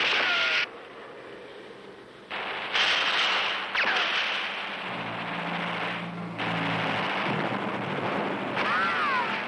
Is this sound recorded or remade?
recorded